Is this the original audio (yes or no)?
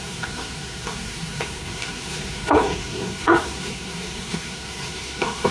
no